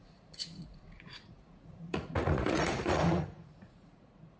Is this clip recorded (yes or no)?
no